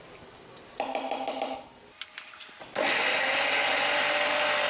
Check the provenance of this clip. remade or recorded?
recorded